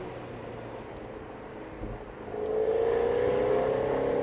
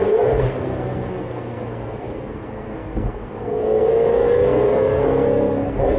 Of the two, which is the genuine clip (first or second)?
first